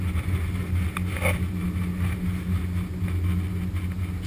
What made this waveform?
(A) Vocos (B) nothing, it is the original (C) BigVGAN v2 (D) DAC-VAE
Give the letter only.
B